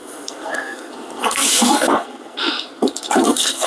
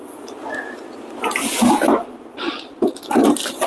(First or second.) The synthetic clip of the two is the first